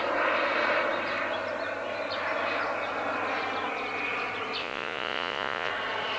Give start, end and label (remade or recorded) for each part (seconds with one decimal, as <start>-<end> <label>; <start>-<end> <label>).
0.0-4.6 recorded; 4.6-5.7 remade; 5.7-6.2 recorded